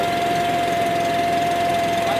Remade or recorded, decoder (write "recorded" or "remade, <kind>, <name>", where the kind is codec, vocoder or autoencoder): recorded